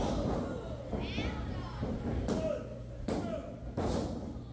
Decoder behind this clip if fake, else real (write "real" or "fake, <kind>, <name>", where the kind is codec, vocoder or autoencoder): real